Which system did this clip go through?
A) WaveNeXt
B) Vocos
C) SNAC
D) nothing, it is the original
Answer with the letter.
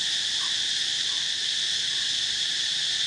D